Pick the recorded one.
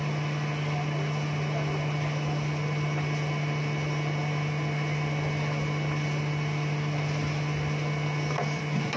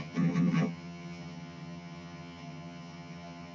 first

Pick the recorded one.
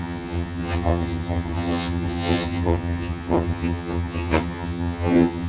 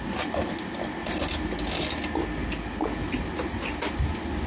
second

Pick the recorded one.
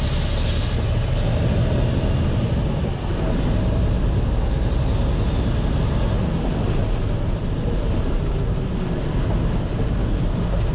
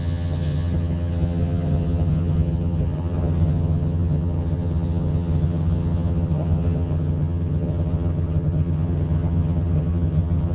first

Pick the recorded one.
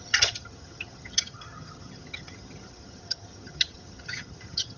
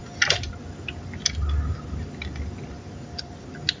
second